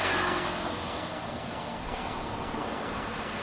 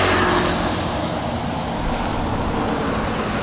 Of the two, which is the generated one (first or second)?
first